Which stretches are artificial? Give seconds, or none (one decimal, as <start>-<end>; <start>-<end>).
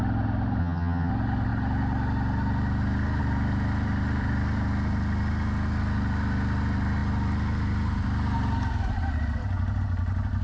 0.6-1.1